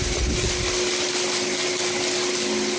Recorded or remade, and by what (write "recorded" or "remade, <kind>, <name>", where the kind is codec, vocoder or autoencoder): recorded